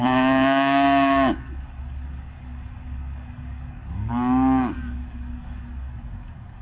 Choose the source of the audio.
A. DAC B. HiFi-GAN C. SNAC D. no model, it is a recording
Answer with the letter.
A